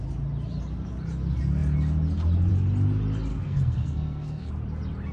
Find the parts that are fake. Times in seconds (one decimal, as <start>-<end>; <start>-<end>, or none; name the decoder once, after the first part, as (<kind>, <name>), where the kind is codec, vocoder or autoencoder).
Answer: 3.3-4.5 (codec, SNAC)